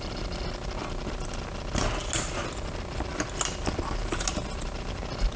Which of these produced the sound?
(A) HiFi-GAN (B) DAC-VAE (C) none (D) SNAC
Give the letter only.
C